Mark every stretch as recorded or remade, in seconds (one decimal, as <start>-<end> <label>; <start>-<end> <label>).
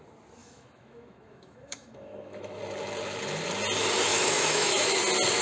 0.0-0.4 recorded; 0.4-2.6 remade; 2.6-4.1 recorded; 4.1-5.0 remade; 5.0-5.4 recorded